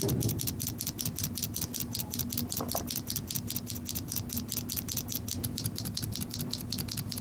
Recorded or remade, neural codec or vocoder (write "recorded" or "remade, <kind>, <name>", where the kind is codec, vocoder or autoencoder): recorded